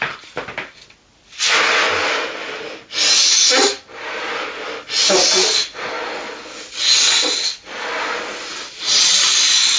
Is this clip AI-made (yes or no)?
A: no